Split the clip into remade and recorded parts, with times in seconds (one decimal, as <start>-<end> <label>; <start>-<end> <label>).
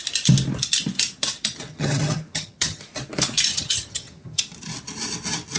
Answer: 0.0-1.7 recorded; 1.7-2.8 remade; 2.8-3.5 recorded; 3.5-4.4 remade; 4.4-5.6 recorded